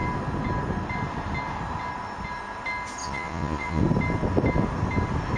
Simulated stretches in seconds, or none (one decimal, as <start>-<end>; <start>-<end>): 3.0-3.8